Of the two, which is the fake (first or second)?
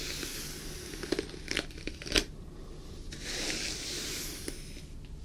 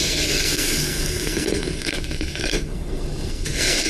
second